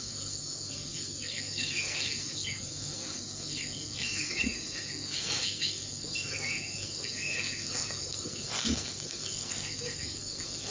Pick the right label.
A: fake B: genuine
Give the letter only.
A